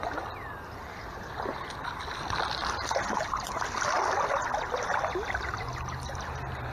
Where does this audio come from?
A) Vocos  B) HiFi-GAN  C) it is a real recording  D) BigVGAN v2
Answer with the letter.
C